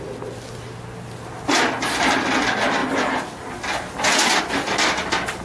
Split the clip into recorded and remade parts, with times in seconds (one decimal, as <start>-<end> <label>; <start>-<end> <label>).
0.0-5.4 recorded